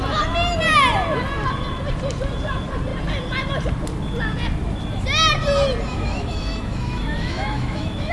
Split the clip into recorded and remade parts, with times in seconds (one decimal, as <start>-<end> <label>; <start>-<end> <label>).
0.0-5.9 recorded; 5.9-8.1 remade